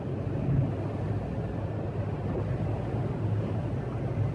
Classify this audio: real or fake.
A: real